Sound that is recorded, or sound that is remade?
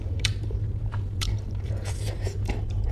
remade